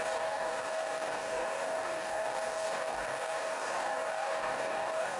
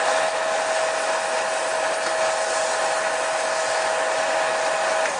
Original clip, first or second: second